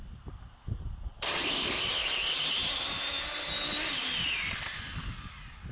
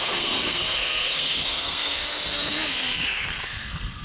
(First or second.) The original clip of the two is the first